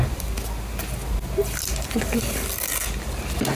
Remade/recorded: recorded